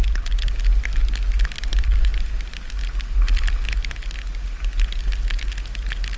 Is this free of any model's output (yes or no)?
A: yes